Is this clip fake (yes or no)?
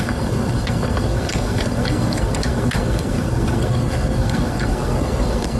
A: yes